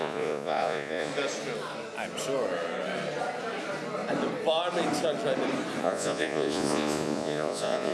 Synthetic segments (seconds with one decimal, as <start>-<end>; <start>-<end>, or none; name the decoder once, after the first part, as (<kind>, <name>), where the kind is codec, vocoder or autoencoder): 0.0-1.1 (vocoder, Vocos); 5.8-7.9